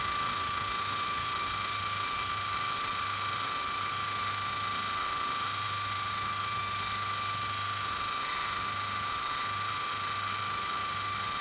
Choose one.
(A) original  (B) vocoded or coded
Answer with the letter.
B